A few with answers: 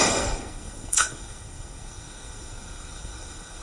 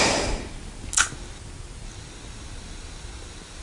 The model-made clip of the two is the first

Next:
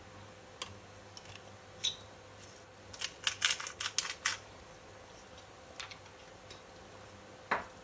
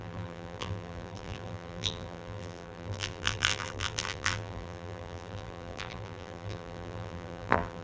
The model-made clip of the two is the second